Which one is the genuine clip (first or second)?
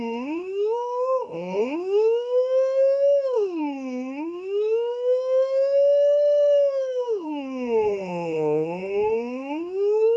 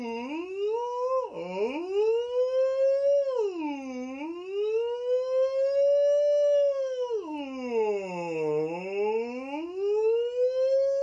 second